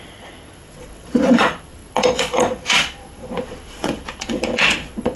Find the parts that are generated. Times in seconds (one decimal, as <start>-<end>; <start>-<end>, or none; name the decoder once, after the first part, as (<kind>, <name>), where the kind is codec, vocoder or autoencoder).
0.0-5.2 (vocoder, Vocos)